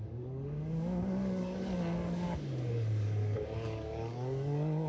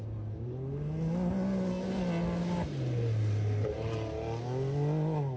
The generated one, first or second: first